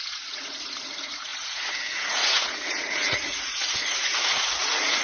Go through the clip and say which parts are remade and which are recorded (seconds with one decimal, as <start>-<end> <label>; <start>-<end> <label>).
0.0-5.0 remade